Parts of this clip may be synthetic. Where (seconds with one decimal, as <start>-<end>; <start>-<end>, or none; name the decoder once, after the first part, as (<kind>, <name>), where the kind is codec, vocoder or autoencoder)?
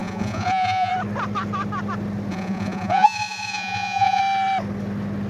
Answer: 0.0-0.9 (vocoder, Vocos); 2.3-4.2